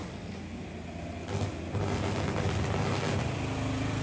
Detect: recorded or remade recorded